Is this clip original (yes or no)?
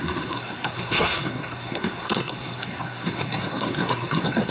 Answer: no